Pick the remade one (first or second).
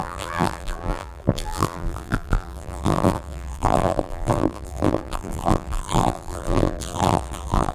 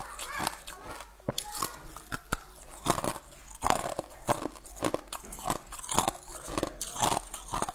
first